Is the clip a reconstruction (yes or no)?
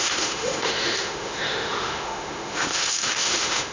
yes